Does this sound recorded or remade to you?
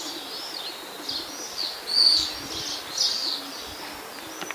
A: recorded